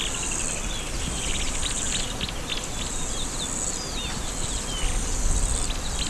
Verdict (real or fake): real